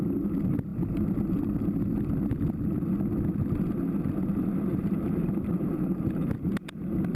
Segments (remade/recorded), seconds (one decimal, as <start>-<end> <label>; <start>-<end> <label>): 0.0-4.7 recorded; 4.7-6.5 remade; 6.5-7.2 recorded